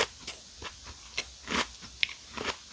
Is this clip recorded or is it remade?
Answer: remade